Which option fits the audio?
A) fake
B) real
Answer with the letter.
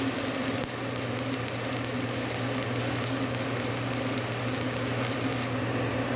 B